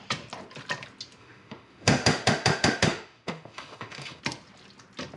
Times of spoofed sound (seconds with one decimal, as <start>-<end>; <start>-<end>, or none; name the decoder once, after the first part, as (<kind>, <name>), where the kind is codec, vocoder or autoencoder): 1.2-4.2 (autoencoder, DAC-VAE)